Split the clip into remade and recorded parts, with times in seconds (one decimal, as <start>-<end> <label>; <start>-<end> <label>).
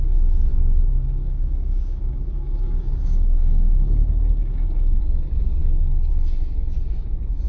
0.0-0.5 recorded; 0.5-5.0 remade; 5.0-5.6 recorded; 5.6-6.1 remade; 6.1-7.5 recorded